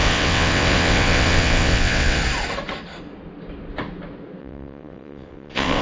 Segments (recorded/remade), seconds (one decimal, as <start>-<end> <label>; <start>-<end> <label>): 0.0-2.2 remade; 2.2-4.4 recorded; 4.4-5.8 remade